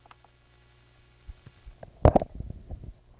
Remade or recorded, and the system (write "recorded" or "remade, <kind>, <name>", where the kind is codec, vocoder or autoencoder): recorded